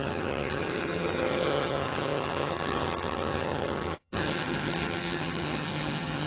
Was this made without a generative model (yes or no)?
no